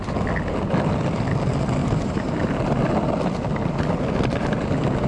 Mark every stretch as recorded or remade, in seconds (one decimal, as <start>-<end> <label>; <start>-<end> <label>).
0.0-1.8 recorded; 1.8-2.5 remade; 2.5-5.1 recorded